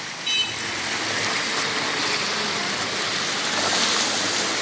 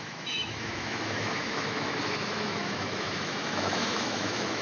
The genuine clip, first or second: first